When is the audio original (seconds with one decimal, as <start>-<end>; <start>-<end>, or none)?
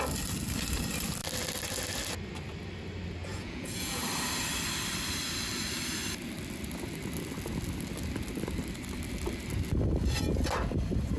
0.0-3.2; 4.0-11.2